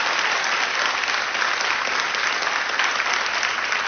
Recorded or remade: recorded